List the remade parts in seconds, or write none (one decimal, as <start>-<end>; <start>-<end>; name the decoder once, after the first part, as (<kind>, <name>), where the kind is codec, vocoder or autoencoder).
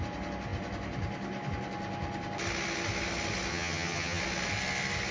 3.5-4.2 (vocoder, HiFi-GAN)